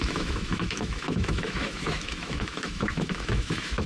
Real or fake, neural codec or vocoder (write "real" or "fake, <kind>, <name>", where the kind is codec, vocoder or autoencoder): fake, autoencoder, DAC-VAE